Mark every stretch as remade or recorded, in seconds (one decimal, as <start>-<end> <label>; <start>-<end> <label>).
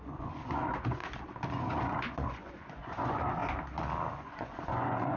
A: 0.0-1.0 remade; 1.0-1.6 recorded; 1.6-3.4 remade; 3.4-4.1 recorded; 4.1-5.2 remade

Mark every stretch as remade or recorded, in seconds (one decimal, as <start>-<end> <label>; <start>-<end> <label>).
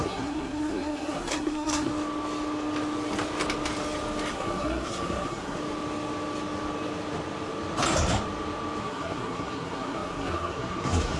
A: 0.0-1.9 remade; 1.9-4.3 recorded; 4.3-5.6 remade; 5.6-8.8 recorded; 8.8-11.2 remade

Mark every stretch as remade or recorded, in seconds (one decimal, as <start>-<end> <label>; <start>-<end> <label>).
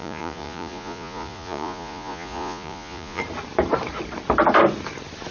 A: 0.0-3.2 remade; 3.2-5.3 recorded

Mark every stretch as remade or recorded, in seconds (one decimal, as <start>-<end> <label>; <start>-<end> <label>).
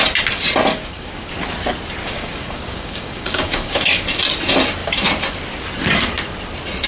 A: 0.0-0.7 recorded; 0.7-1.3 remade; 1.3-2.0 recorded; 2.0-4.0 remade; 4.0-6.9 recorded